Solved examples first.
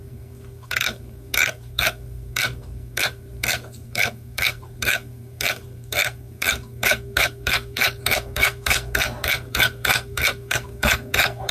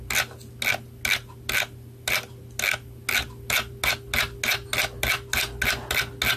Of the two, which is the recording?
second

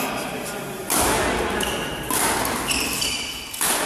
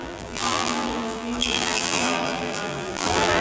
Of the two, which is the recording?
first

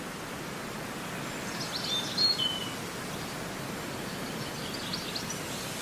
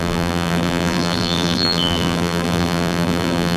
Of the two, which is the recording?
first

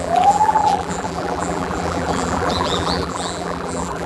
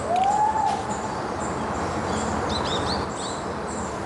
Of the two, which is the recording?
second